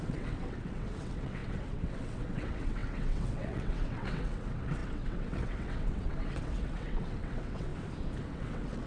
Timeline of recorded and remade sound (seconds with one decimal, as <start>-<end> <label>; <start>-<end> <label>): 0.0-7.7 remade; 7.7-8.3 recorded; 8.3-8.9 remade